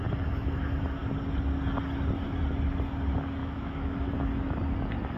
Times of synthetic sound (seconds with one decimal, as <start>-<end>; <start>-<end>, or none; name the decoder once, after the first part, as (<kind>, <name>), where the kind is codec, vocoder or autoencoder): 3.4-4.1 (autoencoder, DAC-VAE)